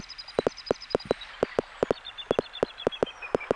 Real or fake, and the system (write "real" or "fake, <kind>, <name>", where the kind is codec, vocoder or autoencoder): real